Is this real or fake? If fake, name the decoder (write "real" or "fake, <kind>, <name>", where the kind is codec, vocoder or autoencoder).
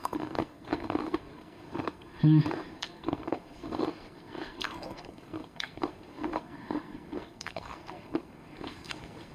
fake, codec, SNAC